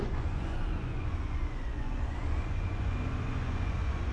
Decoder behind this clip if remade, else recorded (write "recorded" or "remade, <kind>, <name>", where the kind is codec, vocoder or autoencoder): remade, vocoder, Vocos